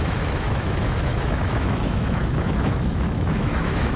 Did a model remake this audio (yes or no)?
yes